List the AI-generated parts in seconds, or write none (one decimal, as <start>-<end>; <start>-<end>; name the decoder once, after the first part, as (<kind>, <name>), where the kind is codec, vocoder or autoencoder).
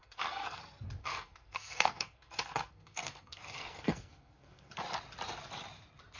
0.0-0.6 (codec, SNAC); 1.0-4.7